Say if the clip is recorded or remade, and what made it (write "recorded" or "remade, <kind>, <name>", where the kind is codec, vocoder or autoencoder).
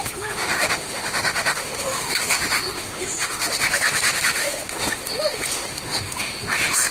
remade, autoencoder, DAC-VAE